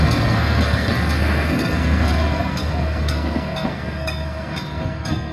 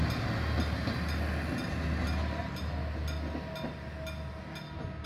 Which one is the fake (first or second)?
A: first